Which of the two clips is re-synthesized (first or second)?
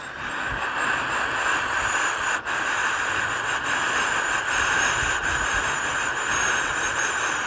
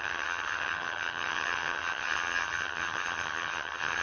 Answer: second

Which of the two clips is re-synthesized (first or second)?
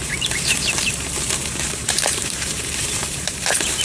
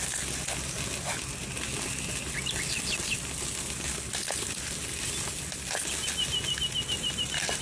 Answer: first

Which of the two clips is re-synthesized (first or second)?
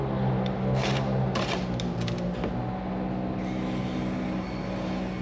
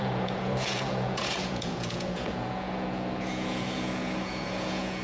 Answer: second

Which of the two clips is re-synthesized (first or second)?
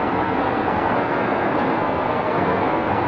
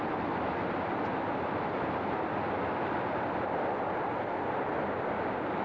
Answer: first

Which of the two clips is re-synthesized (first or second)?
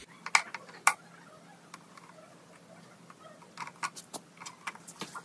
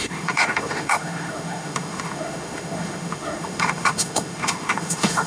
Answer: second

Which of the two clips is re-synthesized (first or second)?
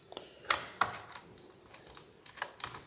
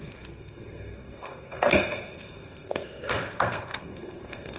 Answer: second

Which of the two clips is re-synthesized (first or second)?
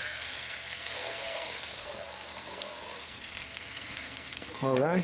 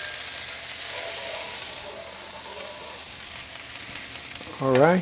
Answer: first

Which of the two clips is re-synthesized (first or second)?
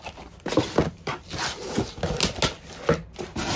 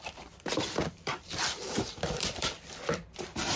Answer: second